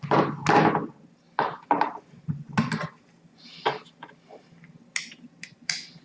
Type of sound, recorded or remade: recorded